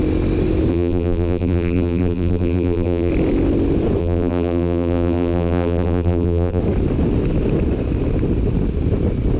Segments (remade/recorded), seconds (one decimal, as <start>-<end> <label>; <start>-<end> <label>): 0.0-0.7 recorded; 0.7-3.1 remade; 3.1-4.0 recorded; 4.0-6.6 remade; 6.6-9.4 recorded